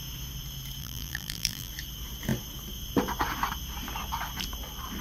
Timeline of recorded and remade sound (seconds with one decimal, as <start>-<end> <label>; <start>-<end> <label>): 0.0-0.8 recorded; 0.8-1.7 remade; 1.7-5.0 recorded